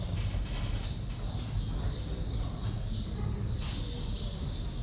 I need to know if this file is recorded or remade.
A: recorded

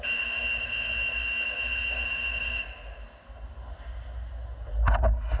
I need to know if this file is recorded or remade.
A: recorded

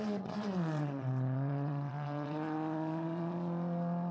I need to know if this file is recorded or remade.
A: remade